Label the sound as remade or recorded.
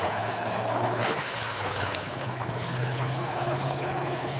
remade